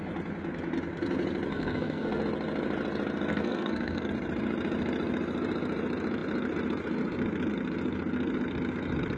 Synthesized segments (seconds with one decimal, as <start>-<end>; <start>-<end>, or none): 1.5-2.2; 3.3-4.1